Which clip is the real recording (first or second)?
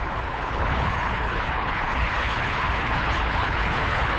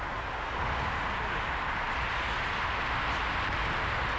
second